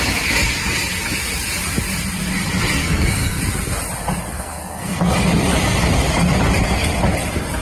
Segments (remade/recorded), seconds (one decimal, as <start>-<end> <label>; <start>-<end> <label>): 0.0-2.8 recorded; 2.8-3.4 remade; 3.4-4.3 recorded; 4.3-5.1 remade; 5.1-7.6 recorded